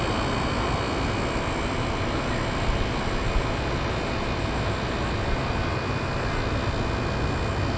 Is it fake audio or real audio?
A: real